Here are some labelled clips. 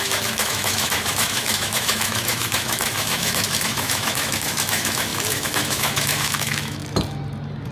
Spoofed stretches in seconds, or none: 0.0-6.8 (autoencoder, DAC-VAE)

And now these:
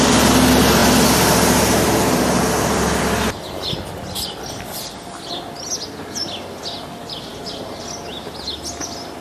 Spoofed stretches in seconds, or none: none

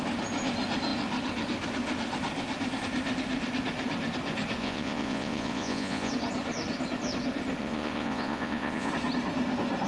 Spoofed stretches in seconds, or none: 4.6-6.1 (vocoder, Vocos); 7.6-8.9

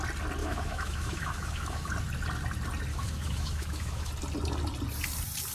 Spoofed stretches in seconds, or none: 0.4-1.9 (autoencoder, DAC-VAE); 2.9-4.1

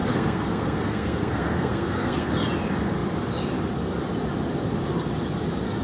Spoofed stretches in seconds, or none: 0.0-2.3 (codec, SNAC)

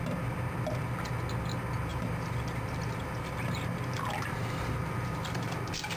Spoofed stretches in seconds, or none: 1.9-5.5 (vocoder, BigVGAN v2)

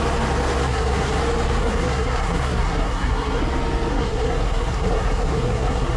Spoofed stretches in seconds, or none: 0.6-1.2 (codec, SNAC); 1.6-3.4; 3.9-6.0